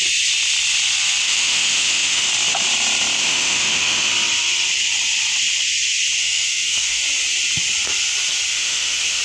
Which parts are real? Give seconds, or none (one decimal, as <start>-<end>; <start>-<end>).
0.0-1.2; 2.3-3.2; 4.1-6.2; 7.0-8.5